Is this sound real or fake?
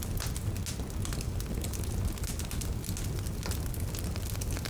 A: real